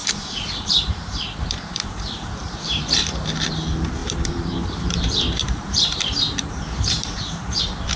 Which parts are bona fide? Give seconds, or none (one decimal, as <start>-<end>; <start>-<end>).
2.8-4.0; 7.6-8.0